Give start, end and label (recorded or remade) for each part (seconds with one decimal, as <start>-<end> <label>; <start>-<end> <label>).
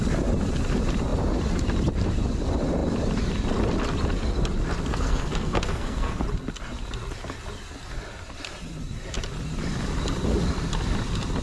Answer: 0.0-4.9 recorded; 4.9-6.2 remade; 6.2-11.4 recorded